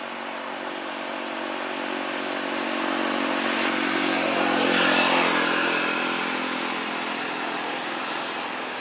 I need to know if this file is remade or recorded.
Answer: recorded